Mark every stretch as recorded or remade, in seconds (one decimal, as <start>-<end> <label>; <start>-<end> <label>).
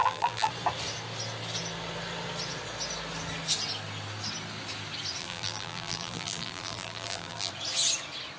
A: 0.0-0.5 remade; 0.5-5.2 recorded; 5.2-7.5 remade; 7.5-8.4 recorded